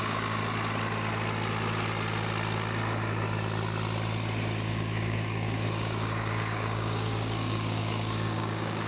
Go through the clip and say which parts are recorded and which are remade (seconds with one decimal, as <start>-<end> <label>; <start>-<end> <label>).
0.0-0.4 remade; 0.4-4.7 recorded; 4.7-8.9 remade